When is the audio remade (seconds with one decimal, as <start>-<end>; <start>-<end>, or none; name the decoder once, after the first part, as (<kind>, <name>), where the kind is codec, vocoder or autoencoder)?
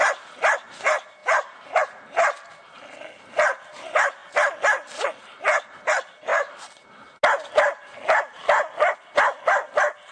none